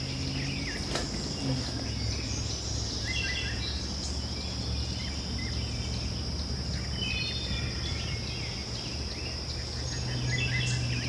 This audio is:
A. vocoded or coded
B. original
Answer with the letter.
B